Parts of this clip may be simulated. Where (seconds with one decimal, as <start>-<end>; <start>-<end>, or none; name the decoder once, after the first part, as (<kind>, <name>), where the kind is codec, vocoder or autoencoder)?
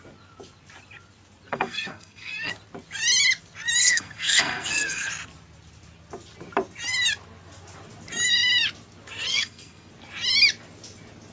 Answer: 1.5-2.5 (codec, SNAC); 3.8-5.1; 9.3-9.9